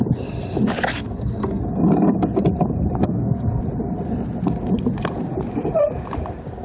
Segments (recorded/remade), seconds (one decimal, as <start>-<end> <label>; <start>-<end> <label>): 0.0-0.9 recorded; 0.9-1.6 remade; 1.6-3.0 recorded; 3.0-3.6 remade; 3.6-6.6 recorded